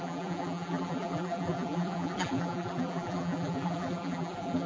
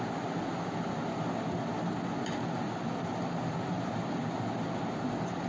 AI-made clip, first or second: first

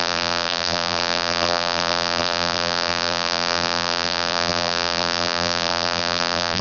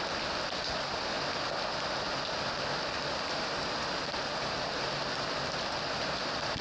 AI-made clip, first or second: first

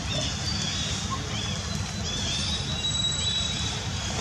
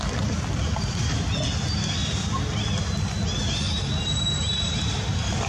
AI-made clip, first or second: first